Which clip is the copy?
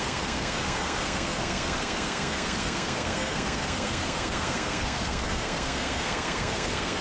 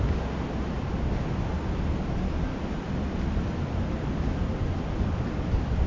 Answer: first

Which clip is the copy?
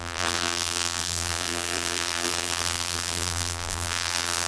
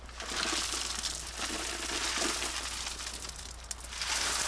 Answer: first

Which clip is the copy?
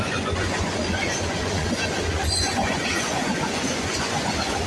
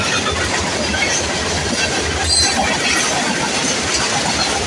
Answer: first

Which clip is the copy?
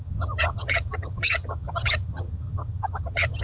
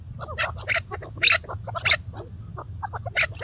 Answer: first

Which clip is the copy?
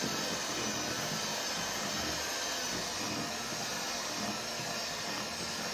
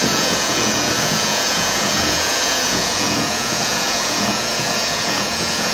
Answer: second